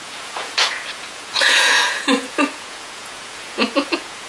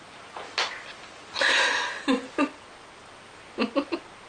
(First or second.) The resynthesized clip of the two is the first